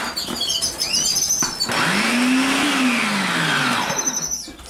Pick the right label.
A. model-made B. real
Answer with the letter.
B